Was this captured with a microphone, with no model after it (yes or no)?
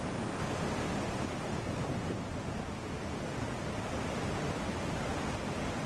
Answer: yes